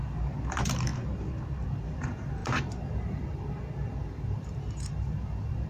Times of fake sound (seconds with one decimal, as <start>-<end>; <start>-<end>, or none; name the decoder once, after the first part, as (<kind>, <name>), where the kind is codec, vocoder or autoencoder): 0.0-0.9 (vocoder, BigVGAN v2); 1.9-5.7